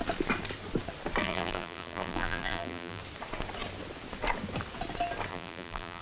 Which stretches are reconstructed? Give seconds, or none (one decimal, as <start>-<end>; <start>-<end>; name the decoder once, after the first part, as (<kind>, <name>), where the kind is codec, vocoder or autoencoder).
1.2-3.0 (vocoder, BigVGAN v2); 5.3-6.0